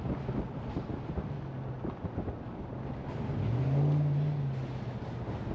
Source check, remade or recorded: recorded